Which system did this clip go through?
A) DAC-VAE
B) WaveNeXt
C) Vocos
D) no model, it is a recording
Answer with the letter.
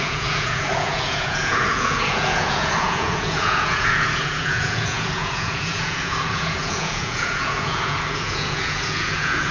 C